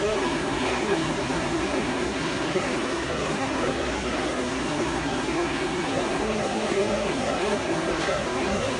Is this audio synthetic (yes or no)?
yes